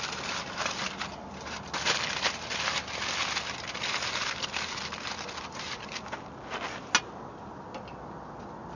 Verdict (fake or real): real